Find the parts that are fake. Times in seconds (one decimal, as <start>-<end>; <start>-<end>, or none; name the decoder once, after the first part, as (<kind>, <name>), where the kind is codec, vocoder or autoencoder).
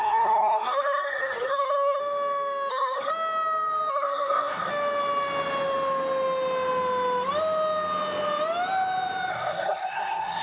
0.0-2.0 (codec, SNAC); 2.7-3.1; 3.9-4.7; 9.3-10.4